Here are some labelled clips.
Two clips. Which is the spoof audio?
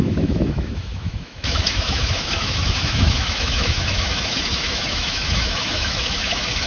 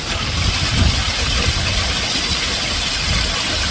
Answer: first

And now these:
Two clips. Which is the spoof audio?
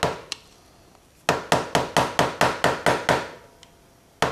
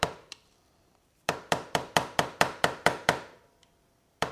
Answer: second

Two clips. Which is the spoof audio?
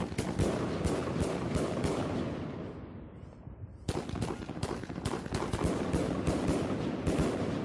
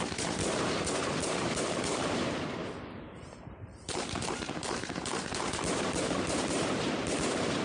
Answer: second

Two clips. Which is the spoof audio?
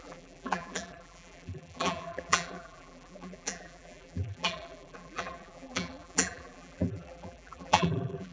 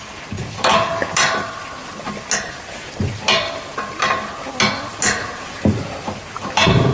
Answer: first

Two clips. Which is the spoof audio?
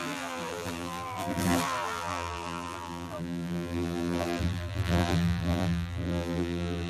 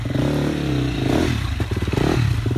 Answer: first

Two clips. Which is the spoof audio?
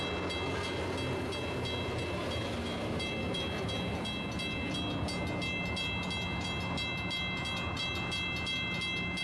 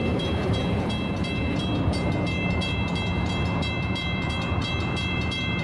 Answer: second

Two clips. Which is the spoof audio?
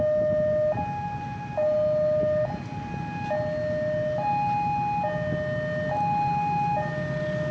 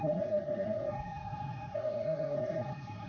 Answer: second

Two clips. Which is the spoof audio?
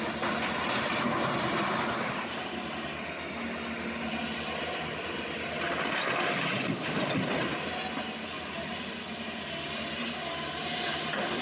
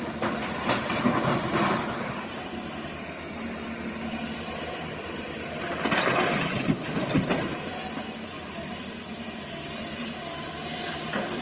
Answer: second